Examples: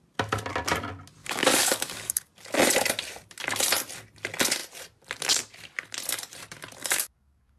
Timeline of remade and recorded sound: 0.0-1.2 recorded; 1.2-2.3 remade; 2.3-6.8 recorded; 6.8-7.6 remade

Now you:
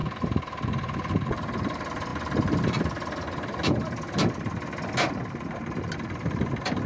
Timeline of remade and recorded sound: 0.0-6.9 recorded

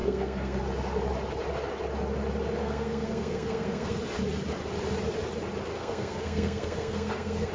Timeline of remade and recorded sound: 0.0-0.6 remade; 0.6-2.6 recorded; 2.6-4.0 remade; 4.0-5.7 recorded; 5.7-7.5 remade

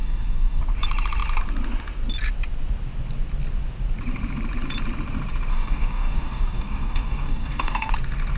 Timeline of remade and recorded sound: 0.0-0.6 remade; 0.6-5.5 recorded; 5.5-7.9 remade; 7.9-8.4 recorded

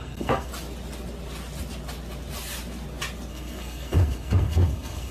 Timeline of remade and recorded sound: 0.0-0.5 remade; 0.5-3.3 recorded; 3.3-5.1 remade

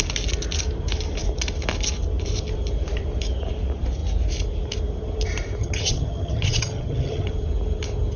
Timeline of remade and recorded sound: 0.0-5.6 recorded; 5.6-7.3 remade; 7.3-8.2 recorded

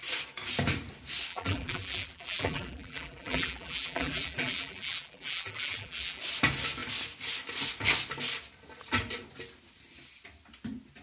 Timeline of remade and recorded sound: 0.0-1.3 recorded; 1.3-6.2 remade; 6.2-11.0 recorded

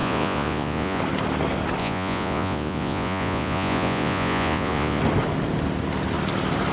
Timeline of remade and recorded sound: 0.0-1.0 remade; 1.0-1.8 recorded; 1.8-5.0 remade; 5.0-6.7 recorded